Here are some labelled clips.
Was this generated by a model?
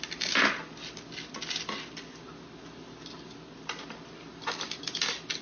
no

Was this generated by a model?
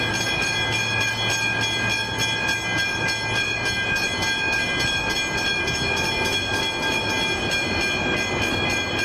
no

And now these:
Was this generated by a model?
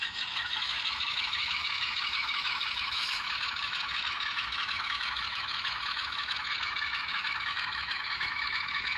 yes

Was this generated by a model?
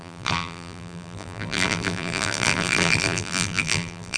yes